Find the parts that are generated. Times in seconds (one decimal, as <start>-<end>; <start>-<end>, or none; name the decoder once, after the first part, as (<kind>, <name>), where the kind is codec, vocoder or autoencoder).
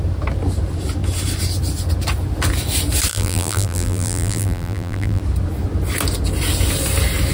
3.1-5.2 (vocoder, BigVGAN v2)